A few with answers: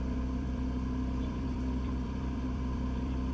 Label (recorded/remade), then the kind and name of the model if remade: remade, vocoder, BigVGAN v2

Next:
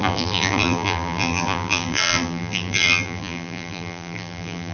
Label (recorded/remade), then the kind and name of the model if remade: remade, vocoder, BigVGAN v2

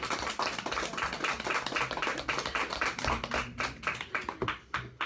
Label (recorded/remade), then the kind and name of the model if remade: recorded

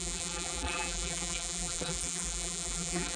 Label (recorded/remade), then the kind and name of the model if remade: remade, vocoder, BigVGAN v2